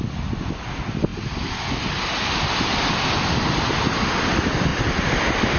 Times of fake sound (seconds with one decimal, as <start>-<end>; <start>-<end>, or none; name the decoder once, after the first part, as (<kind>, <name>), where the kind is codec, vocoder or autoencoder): none